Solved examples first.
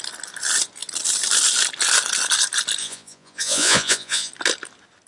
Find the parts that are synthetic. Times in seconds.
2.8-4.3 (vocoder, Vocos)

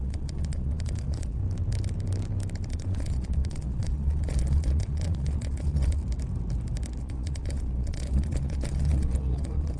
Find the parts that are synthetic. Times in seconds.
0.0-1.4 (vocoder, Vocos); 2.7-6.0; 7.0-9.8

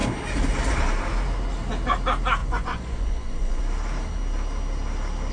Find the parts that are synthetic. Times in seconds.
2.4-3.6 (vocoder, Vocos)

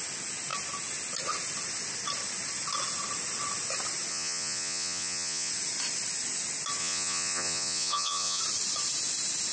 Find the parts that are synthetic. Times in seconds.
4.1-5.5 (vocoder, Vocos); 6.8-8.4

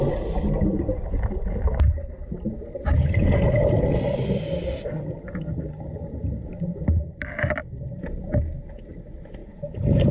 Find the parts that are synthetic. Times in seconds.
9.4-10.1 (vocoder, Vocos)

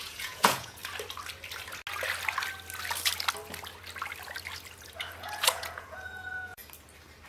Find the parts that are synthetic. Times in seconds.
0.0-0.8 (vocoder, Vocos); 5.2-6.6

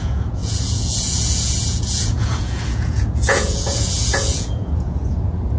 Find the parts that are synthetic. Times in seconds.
0.0-5.6 (vocoder, Vocos)